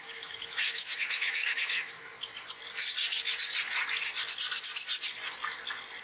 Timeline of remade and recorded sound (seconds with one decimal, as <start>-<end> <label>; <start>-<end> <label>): 0.0-2.1 remade; 2.1-6.0 recorded

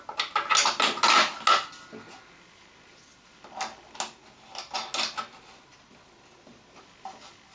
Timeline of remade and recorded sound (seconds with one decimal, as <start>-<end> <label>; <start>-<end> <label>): 0.0-7.5 recorded

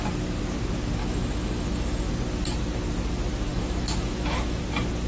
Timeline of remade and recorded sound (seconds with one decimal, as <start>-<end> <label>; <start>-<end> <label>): 0.0-1.0 recorded; 1.0-2.1 remade; 2.1-3.5 recorded; 3.5-4.6 remade; 4.6-5.1 recorded

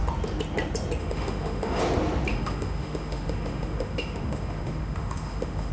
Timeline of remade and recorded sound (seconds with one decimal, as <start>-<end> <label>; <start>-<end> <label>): 0.0-1.0 recorded; 1.0-1.8 remade; 1.8-2.3 recorded; 2.3-5.7 remade